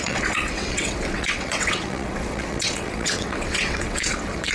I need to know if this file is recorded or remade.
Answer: remade